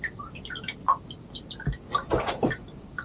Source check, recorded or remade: recorded